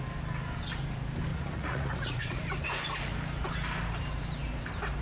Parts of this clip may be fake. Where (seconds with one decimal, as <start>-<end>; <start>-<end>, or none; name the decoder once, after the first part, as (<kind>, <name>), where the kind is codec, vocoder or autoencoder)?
1.3-2.4 (vocoder, Vocos)